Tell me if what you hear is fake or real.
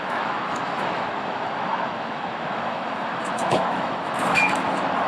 fake